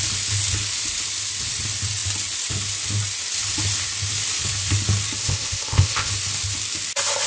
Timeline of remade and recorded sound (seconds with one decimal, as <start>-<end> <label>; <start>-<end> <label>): 0.0-5.2 recorded; 5.2-6.1 remade; 6.1-7.3 recorded